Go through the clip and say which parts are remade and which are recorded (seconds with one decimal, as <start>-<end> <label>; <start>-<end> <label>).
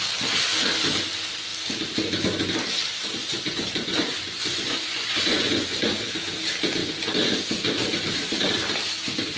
0.0-3.2 recorded; 3.2-6.0 remade; 6.0-9.4 recorded